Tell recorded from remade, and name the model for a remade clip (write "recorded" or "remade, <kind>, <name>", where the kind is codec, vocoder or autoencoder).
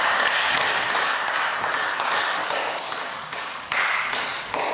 remade, codec, DAC